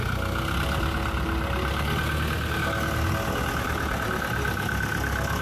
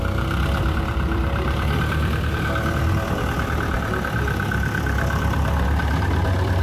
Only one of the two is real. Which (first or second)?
first